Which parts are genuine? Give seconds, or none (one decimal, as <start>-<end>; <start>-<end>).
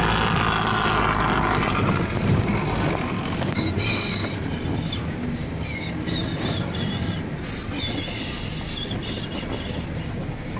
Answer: 0.0-10.6